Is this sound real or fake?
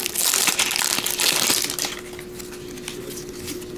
real